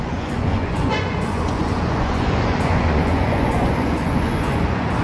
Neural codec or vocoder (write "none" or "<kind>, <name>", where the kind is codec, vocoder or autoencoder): vocoder, Vocos